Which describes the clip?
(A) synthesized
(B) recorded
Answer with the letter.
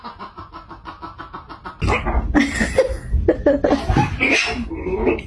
B